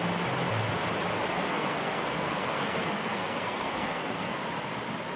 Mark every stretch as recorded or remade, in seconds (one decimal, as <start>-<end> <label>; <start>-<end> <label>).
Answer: 0.0-1.3 recorded; 1.3-4.4 remade; 4.4-5.2 recorded

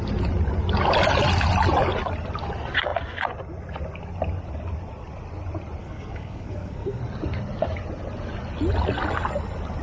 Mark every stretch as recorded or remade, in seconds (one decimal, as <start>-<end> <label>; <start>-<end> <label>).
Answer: 0.0-5.8 recorded; 5.8-7.0 remade; 7.0-9.8 recorded

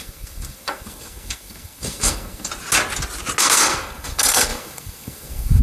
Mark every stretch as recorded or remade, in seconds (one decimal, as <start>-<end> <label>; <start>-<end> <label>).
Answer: 0.0-2.5 remade; 2.5-3.4 recorded; 3.4-5.6 remade